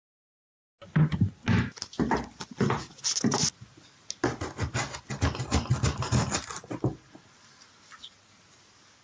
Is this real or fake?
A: real